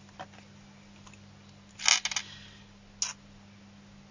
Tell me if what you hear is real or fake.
real